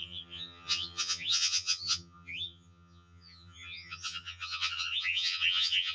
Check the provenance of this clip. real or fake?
fake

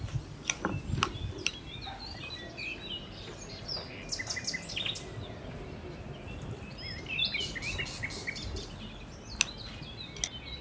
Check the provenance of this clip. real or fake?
real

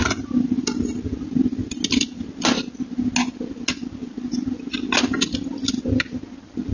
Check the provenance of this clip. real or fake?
real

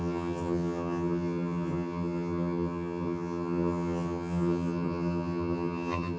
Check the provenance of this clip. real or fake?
fake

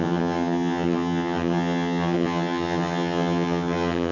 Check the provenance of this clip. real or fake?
fake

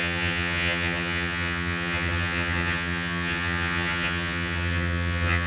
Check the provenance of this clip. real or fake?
fake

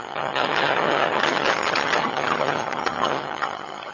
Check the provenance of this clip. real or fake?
fake